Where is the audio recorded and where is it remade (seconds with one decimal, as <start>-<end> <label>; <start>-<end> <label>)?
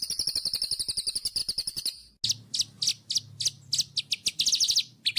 0.0-5.2 recorded